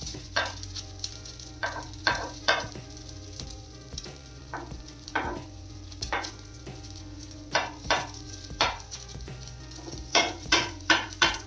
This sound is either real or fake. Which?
fake